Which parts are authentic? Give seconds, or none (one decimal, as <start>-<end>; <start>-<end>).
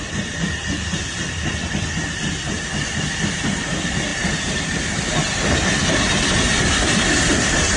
0.0-4.1; 5.0-7.8